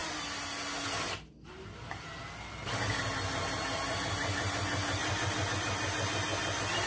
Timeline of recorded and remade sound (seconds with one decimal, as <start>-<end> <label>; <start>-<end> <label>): 0.0-6.9 recorded